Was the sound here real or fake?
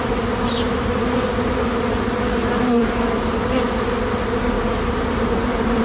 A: real